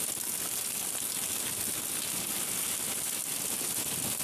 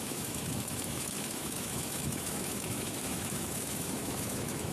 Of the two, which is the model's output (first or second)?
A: second